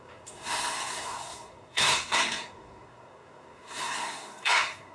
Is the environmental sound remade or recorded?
remade